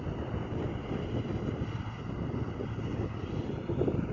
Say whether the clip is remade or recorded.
recorded